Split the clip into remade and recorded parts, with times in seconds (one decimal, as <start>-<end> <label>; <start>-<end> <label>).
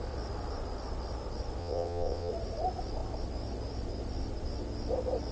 0.0-1.6 recorded; 1.6-2.3 remade; 2.3-5.3 recorded